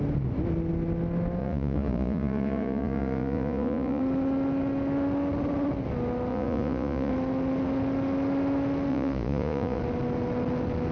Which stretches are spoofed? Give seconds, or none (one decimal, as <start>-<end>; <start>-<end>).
1.4-4.0; 6.3-7.1; 8.9-9.8